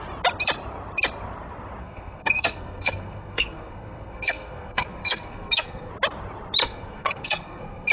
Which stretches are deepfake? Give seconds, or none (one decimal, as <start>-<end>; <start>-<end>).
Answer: 1.8-5.9; 6.6-7.9